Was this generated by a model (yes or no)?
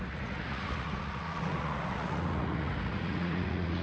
yes